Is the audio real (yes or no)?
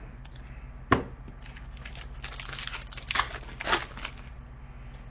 yes